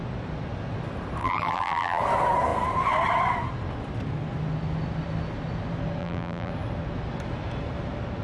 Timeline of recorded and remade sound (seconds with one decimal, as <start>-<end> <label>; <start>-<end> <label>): 0.0-1.2 recorded; 1.2-2.0 remade; 2.0-6.0 recorded; 6.0-6.5 remade; 6.5-8.2 recorded